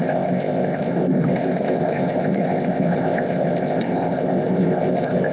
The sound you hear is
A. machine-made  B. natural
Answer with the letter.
A